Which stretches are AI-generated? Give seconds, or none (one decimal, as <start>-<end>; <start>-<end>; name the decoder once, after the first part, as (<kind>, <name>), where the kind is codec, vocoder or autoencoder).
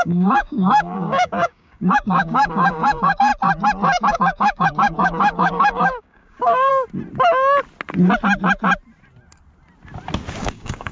0.0-3.3 (codec, DAC); 4.1-6.7; 10.4-10.9